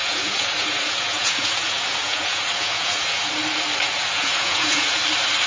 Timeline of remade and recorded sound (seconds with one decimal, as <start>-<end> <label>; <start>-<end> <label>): 0.0-3.3 remade; 3.3-3.8 recorded; 3.8-5.0 remade; 5.0-5.5 recorded